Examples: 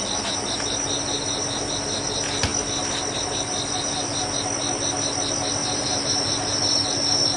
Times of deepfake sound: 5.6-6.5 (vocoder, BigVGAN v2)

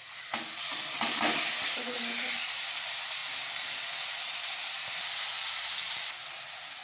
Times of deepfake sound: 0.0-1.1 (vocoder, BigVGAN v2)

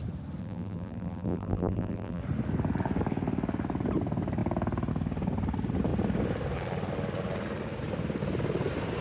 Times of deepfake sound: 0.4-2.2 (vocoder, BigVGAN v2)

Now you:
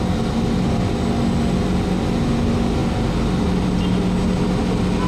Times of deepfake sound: none

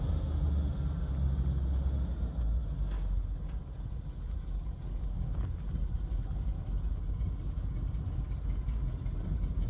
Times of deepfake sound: none

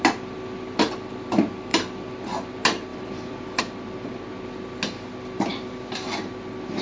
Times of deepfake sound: 1.7-2.5 (vocoder, BigVGAN v2); 2.9-3.6

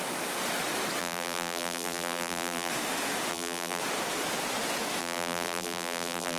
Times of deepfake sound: 1.0-2.7 (vocoder, BigVGAN v2); 3.3-3.8; 5.0-6.4

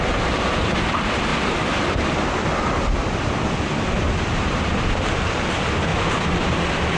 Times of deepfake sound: 1.3-5.5 (vocoder, BigVGAN v2)